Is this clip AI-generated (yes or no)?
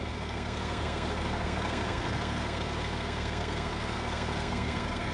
yes